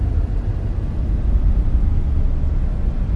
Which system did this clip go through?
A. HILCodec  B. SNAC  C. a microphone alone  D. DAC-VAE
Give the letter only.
C